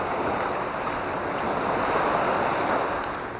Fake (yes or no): no